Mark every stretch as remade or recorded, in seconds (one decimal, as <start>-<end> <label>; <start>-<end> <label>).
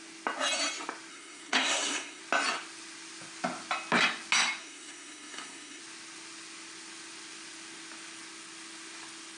0.0-1.1 recorded; 1.1-2.2 remade; 2.2-4.6 recorded; 4.6-5.8 remade; 5.8-9.4 recorded